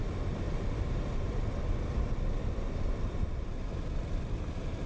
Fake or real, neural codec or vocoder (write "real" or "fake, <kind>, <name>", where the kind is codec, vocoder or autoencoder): real